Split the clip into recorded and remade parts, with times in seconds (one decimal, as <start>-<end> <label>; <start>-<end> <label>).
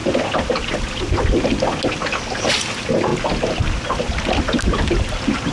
0.0-5.5 recorded